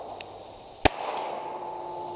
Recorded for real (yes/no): yes